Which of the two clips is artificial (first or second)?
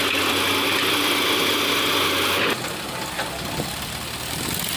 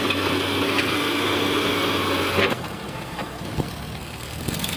second